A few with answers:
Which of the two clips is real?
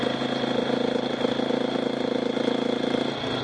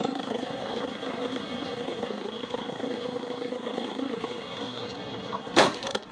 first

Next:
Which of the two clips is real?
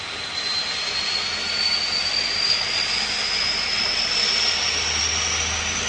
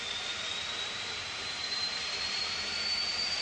first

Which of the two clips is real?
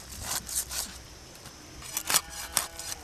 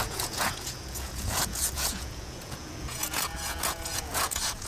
first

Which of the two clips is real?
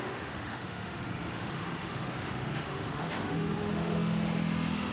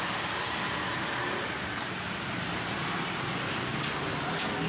second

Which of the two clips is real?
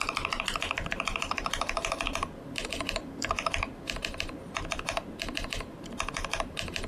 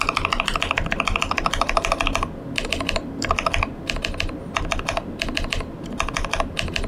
second